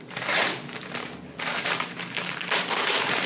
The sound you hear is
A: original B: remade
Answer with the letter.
A